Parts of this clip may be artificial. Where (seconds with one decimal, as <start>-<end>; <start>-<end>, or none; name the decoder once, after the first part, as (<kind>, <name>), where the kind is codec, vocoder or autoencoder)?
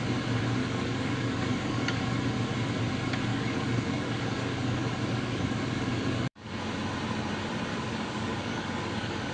0.6-2.0 (codec, DAC); 3.3-6.6; 7.7-9.3